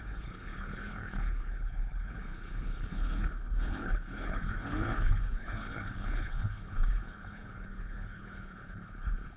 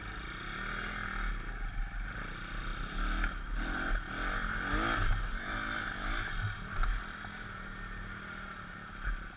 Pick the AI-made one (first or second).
first